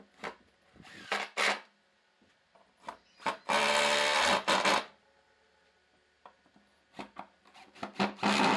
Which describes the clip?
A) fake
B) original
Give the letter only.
B